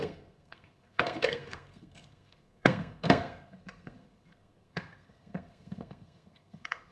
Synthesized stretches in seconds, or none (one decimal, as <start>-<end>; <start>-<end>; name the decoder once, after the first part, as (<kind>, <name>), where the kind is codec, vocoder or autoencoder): 0.0-6.9 (codec, SNAC)